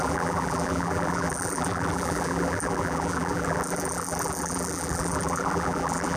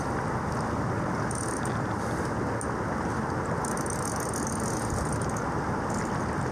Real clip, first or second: second